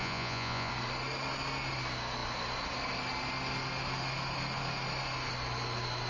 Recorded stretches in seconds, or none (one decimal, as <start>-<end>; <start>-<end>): 0.7-6.1